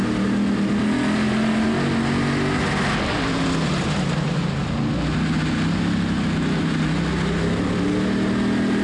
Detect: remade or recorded recorded